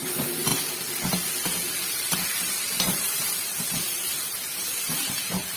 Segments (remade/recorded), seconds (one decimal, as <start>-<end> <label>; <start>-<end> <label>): 0.0-0.5 remade; 0.5-1.7 recorded; 1.7-5.6 remade